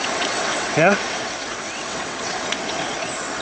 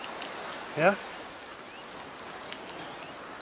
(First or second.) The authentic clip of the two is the second